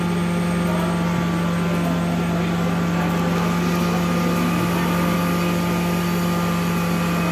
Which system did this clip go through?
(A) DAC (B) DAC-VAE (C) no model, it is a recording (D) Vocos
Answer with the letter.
C